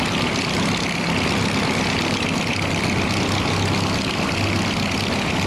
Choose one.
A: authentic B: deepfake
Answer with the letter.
A